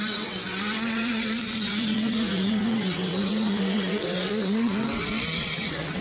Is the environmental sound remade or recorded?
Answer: remade